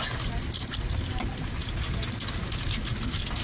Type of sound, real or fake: real